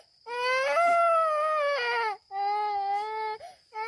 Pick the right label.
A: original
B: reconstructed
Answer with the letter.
A